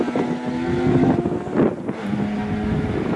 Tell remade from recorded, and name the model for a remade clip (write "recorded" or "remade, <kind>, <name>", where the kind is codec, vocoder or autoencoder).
recorded